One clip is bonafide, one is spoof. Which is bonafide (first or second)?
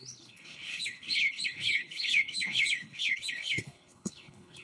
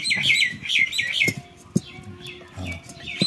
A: second